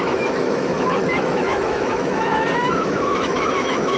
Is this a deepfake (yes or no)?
yes